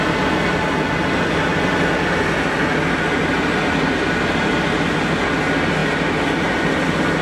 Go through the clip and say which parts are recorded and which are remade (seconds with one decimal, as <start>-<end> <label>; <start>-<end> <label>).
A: 0.0-7.2 recorded